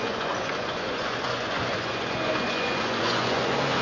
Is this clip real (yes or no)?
no